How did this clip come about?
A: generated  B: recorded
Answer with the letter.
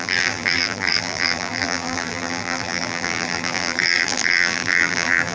A